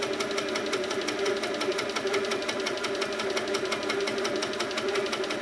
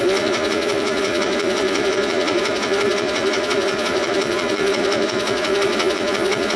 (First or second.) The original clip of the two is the first